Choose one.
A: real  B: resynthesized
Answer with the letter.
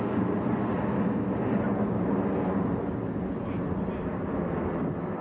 A